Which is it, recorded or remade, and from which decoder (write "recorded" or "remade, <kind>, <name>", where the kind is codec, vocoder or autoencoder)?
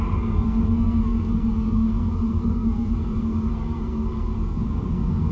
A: remade, codec, SNAC